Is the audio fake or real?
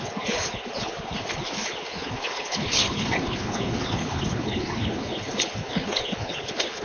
fake